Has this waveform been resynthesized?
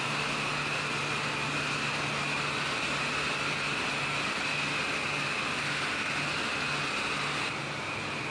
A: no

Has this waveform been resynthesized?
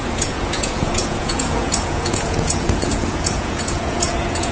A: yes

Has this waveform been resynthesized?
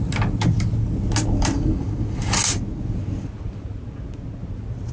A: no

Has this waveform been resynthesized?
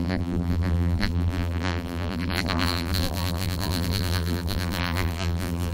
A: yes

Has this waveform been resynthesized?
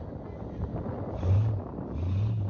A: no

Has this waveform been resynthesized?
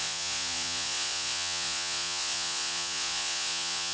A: yes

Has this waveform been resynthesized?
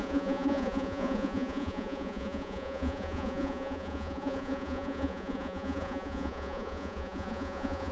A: yes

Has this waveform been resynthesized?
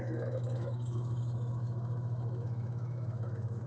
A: yes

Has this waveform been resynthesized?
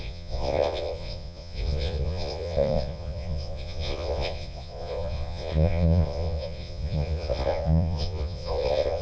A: yes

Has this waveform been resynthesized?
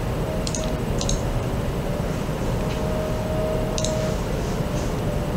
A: yes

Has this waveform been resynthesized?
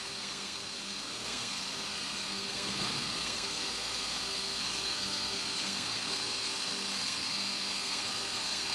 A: yes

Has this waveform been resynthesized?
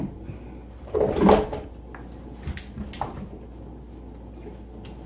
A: no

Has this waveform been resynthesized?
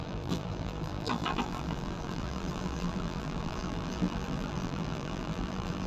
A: yes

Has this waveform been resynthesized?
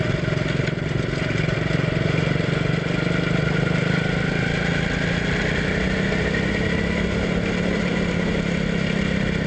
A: no